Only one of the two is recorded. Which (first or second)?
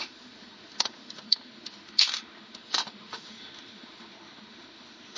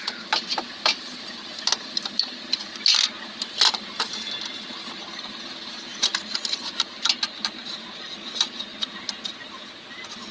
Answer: second